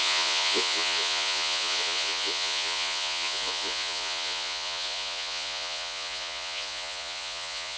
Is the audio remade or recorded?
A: remade